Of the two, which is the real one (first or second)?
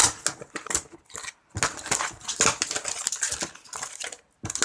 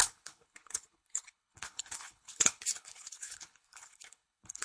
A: first